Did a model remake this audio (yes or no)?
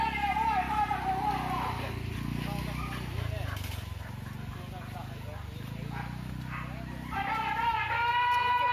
no